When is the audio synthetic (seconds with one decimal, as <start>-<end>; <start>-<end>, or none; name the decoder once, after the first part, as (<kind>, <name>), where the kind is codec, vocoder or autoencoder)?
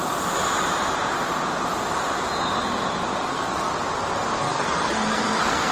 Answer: 3.3-3.7 (codec, SNAC); 4.4-5.7